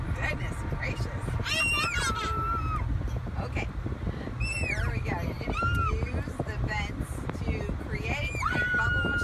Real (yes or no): yes